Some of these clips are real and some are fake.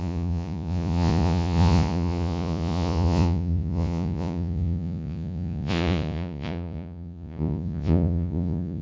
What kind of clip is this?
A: fake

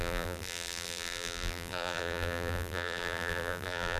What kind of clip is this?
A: fake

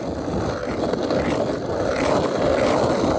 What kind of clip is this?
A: real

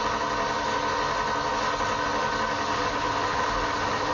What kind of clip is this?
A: real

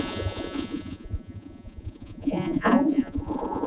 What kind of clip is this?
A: fake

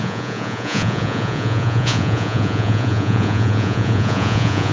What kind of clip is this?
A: fake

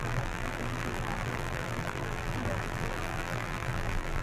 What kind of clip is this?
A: fake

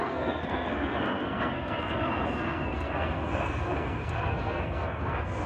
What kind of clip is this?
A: fake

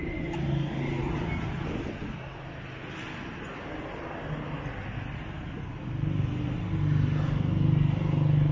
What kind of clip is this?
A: real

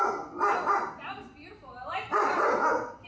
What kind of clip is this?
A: real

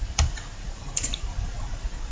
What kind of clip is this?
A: fake